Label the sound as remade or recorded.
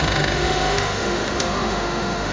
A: remade